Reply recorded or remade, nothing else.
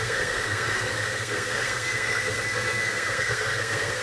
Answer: remade